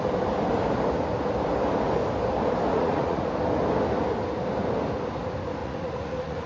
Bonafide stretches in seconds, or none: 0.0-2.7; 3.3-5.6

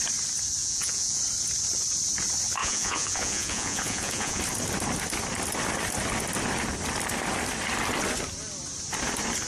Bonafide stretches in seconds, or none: 0.0-0.6; 1.2-2.6; 4.4-9.5